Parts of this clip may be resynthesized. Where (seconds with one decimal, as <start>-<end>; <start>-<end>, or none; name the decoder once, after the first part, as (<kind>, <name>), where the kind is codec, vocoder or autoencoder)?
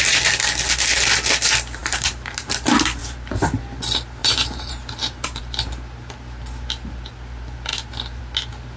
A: 3.0-3.6 (vocoder, BigVGAN v2); 4.2-5.4